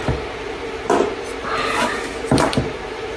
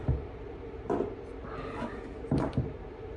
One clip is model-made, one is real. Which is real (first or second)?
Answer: first